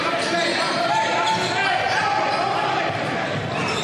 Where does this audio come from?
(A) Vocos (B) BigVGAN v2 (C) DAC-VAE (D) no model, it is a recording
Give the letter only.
D